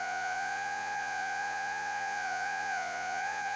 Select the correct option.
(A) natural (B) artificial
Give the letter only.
B